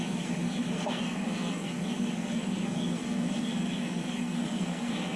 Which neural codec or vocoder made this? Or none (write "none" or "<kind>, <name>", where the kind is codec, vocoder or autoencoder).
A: codec, SNAC